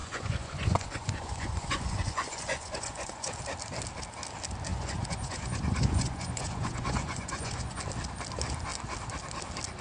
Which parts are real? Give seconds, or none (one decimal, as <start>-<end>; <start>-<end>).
3.3-4.7; 7.8-9.8